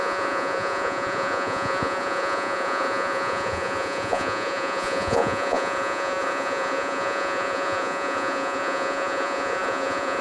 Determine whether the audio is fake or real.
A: fake